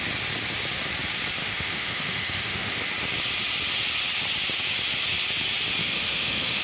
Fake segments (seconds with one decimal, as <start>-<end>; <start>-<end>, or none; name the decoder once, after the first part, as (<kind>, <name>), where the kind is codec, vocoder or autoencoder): 1.4-2.8 (autoencoder, DAC-VAE); 5.8-6.6